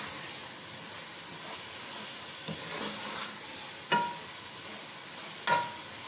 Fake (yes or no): no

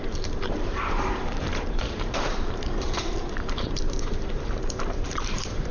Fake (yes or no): yes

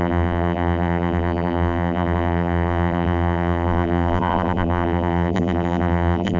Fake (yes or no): yes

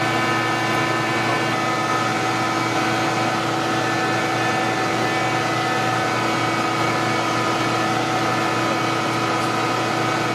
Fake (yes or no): no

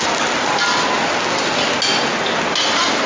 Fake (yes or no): no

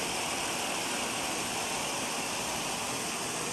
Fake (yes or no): yes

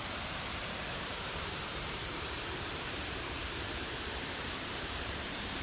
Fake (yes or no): yes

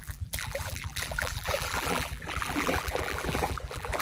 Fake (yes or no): yes